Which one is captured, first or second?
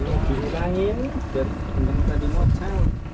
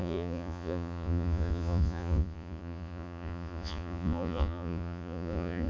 first